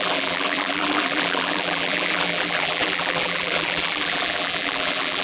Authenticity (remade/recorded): remade